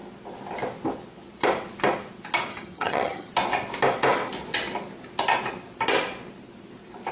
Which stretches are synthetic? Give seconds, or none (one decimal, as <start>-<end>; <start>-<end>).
2.5-3.3